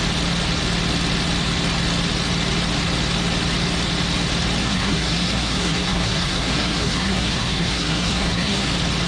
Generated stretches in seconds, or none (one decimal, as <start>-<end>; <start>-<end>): 4.6-8.7